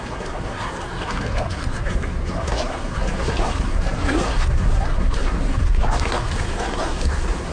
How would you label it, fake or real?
fake